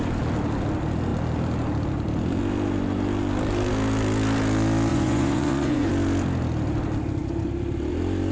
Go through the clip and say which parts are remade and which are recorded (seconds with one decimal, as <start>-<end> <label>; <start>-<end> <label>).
0.0-4.9 recorded; 4.9-5.9 remade; 5.9-8.3 recorded

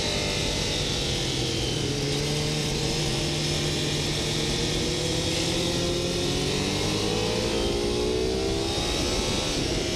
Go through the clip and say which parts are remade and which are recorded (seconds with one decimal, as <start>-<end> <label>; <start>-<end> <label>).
0.0-2.6 recorded; 2.6-3.2 remade; 3.2-10.0 recorded

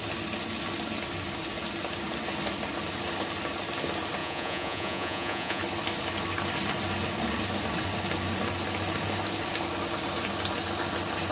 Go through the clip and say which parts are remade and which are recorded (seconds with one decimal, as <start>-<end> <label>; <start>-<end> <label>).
0.0-4.2 recorded; 4.2-5.6 remade; 5.6-11.3 recorded